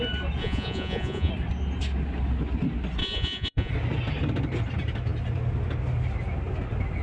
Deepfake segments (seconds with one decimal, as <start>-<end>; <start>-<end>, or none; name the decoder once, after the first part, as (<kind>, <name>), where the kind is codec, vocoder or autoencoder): 0.4-1.3 (vocoder, Vocos); 3.0-3.7